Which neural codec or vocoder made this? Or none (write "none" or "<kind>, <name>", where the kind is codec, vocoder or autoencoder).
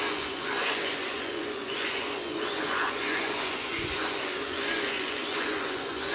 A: vocoder, Vocos